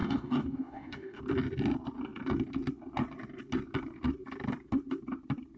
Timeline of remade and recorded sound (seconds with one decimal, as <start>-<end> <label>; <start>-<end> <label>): 0.0-1.2 remade; 1.2-5.6 recorded